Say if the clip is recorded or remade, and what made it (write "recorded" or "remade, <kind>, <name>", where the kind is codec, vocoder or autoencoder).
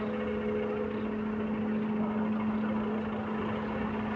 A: recorded